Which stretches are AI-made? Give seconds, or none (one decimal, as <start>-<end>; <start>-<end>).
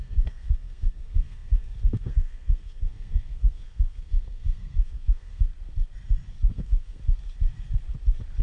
0.0-5.5; 6.5-7.0